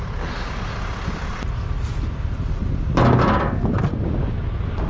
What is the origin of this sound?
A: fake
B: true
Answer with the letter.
B